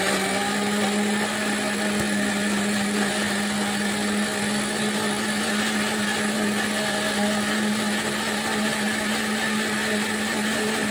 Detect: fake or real real